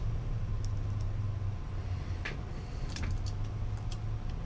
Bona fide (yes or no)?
yes